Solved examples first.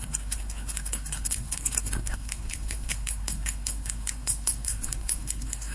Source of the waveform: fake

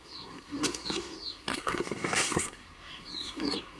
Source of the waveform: fake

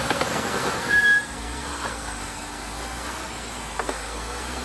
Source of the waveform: fake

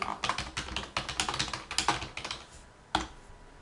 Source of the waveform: real